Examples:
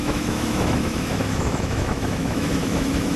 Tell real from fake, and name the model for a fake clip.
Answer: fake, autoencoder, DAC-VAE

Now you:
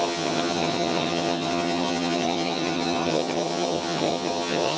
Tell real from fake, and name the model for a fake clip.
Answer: fake, vocoder, HiFi-GAN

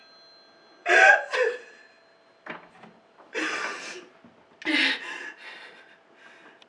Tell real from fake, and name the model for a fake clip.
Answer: real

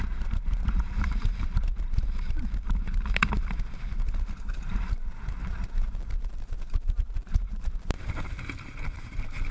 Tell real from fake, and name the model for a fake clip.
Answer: fake, vocoder, BigVGAN v2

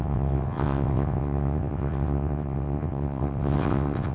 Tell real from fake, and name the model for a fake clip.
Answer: fake, vocoder, WaveNeXt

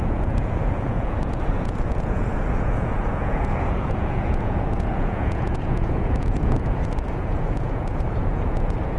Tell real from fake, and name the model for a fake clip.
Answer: fake, vocoder, Vocos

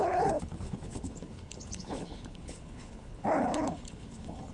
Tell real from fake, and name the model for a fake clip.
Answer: fake, codec, HILCodec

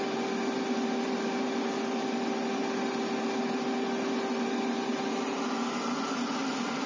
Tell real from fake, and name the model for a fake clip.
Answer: real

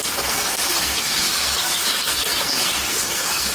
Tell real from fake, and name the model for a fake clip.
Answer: fake, codec, SNAC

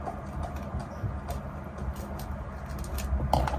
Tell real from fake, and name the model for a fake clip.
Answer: real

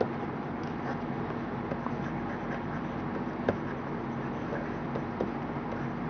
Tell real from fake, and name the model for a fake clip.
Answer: real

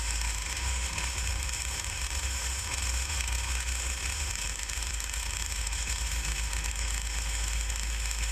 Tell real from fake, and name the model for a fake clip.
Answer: fake, autoencoder, DAC-VAE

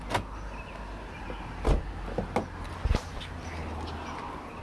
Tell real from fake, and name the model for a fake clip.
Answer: real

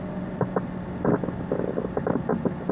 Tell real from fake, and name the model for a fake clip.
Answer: real